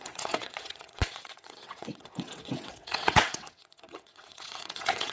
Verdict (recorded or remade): remade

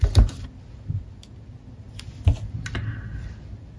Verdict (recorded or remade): recorded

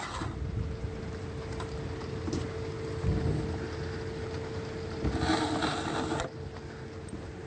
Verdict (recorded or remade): recorded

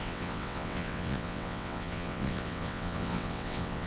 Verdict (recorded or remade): remade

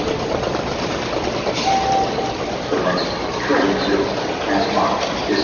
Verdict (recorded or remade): recorded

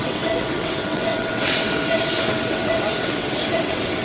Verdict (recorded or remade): remade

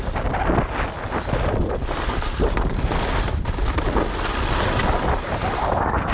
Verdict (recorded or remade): recorded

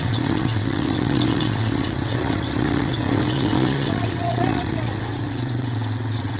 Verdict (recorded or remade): remade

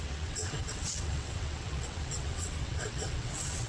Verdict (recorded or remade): remade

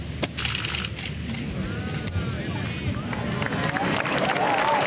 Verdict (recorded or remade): recorded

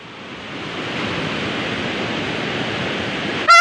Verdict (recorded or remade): recorded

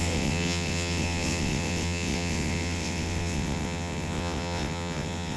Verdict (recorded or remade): remade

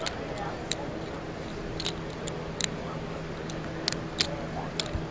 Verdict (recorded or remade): recorded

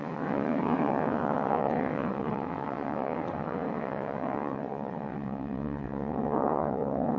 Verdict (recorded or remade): remade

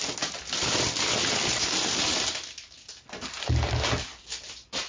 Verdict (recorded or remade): recorded